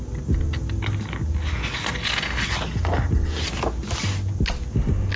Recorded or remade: recorded